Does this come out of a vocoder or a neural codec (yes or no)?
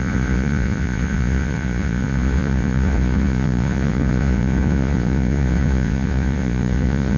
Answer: yes